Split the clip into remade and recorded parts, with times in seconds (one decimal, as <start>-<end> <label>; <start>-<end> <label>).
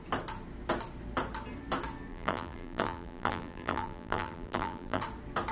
0.0-2.1 recorded; 2.1-5.0 remade; 5.0-5.5 recorded